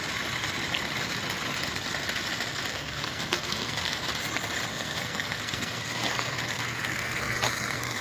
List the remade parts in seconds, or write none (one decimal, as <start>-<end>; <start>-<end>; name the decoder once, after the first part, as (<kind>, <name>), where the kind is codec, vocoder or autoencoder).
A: 2.7-4.0 (codec, SNAC); 4.7-8.0